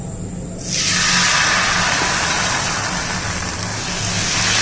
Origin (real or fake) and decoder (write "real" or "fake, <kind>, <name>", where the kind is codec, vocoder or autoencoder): real